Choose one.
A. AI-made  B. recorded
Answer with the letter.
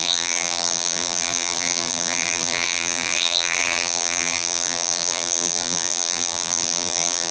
A